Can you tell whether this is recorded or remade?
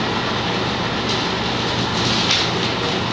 recorded